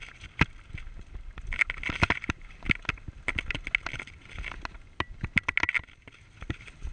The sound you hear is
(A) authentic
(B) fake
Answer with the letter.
A